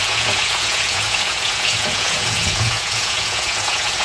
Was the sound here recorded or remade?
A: remade